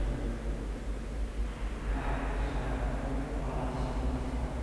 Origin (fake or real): real